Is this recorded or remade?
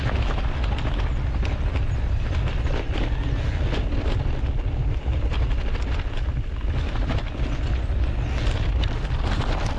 recorded